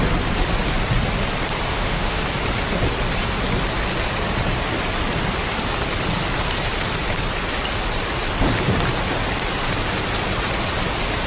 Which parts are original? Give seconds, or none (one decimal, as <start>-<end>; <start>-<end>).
0.0-1.7; 2.2-11.3